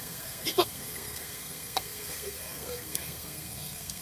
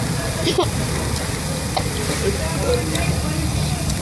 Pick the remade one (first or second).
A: first